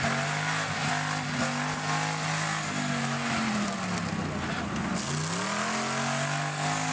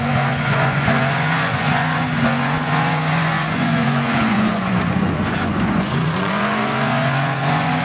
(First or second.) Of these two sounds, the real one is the first